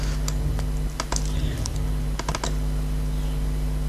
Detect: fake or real real